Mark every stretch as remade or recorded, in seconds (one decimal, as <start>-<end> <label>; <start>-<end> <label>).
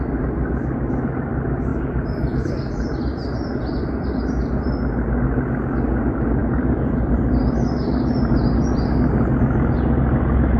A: 0.0-1.7 recorded; 1.7-2.5 remade; 2.5-3.1 recorded; 3.1-4.6 remade; 4.6-6.4 recorded; 6.4-7.3 remade; 7.3-10.6 recorded